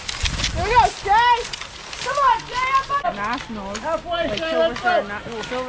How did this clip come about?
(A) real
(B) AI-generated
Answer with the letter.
A